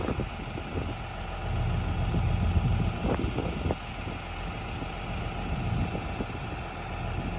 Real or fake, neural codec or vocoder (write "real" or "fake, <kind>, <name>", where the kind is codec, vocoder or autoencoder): real